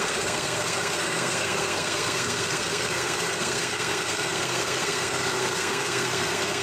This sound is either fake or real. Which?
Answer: fake